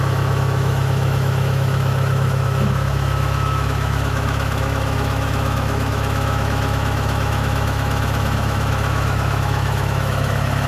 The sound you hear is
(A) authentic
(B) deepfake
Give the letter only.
B